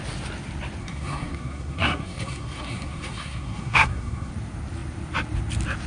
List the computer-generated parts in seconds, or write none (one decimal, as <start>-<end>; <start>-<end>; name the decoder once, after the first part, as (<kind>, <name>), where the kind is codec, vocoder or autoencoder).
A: 0.8-4.3 (codec, SNAC)